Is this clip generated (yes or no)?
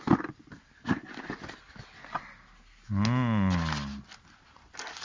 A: no